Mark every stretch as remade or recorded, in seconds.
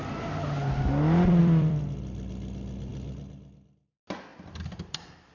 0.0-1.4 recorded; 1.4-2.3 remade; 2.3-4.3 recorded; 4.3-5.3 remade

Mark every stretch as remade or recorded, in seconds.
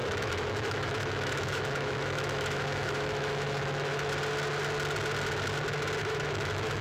0.0-4.1 remade; 4.1-6.0 recorded; 6.0-6.8 remade